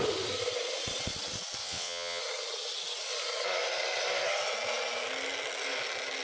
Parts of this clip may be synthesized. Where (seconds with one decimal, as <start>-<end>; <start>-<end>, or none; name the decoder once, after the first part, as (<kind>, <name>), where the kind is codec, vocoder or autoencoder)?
1.6-2.2 (vocoder, WaveNeXt)